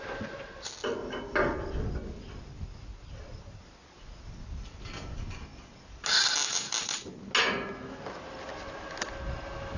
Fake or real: real